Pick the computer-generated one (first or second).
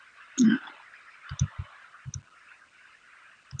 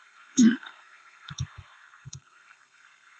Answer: second